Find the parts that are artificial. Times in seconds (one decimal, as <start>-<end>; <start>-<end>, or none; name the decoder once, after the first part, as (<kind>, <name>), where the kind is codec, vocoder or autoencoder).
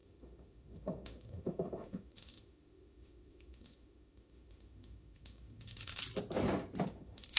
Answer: 0.0-6.0 (autoencoder, DAC-VAE); 6.9-7.4